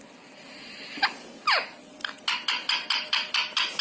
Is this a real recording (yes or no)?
yes